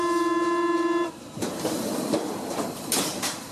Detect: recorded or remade remade